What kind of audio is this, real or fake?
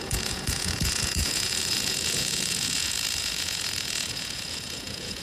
fake